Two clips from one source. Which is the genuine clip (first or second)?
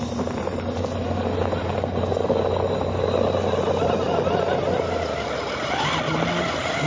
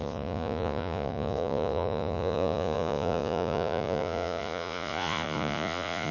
first